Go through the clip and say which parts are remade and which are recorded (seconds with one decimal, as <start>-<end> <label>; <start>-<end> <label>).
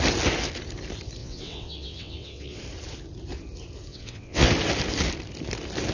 0.0-1.2 recorded; 1.2-2.6 remade; 2.6-3.9 recorded; 3.9-4.5 remade; 4.5-5.9 recorded